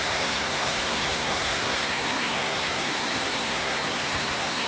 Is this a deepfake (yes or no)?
yes